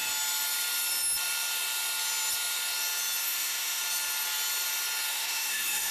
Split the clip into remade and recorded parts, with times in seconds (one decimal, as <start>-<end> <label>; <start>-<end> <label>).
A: 0.0-3.2 recorded; 3.2-3.8 remade; 3.8-5.1 recorded; 5.1-5.9 remade

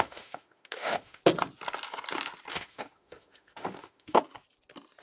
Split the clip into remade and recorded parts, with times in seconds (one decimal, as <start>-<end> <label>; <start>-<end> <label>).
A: 0.0-1.2 remade; 1.2-2.5 recorded; 2.5-4.2 remade; 4.2-5.0 recorded